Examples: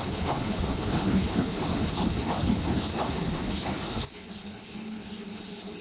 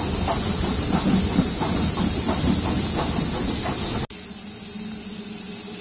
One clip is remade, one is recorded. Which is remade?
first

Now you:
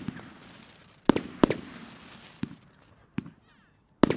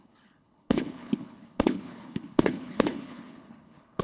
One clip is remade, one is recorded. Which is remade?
second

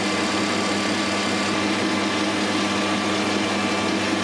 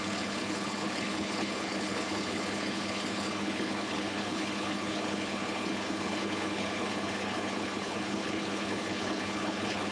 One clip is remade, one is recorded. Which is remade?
second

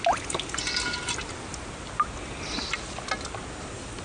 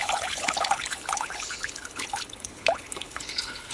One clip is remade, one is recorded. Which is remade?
second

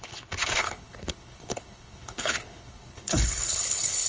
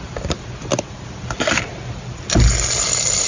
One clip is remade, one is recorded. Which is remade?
first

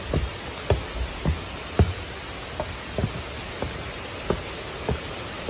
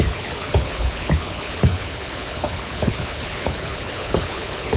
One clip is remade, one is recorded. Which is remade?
second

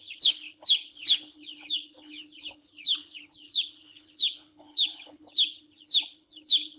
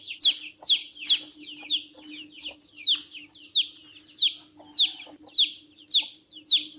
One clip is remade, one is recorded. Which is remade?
first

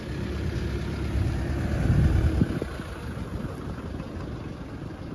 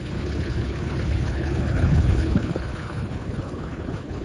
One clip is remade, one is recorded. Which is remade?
second